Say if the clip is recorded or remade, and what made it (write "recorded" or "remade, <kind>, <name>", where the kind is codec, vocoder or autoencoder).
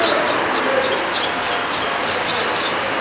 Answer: recorded